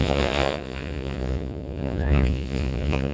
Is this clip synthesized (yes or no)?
yes